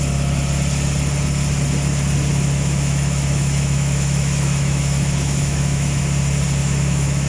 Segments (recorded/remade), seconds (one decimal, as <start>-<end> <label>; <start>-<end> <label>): 0.0-2.3 recorded; 2.3-6.0 remade; 6.0-6.6 recorded; 6.6-7.3 remade